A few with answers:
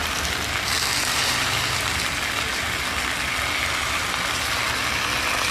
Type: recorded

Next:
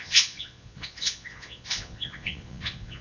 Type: remade